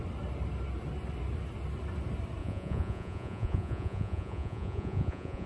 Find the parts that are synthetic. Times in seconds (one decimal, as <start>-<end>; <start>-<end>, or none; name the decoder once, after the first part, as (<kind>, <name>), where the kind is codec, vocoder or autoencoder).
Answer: 2.4-5.5 (vocoder, Vocos)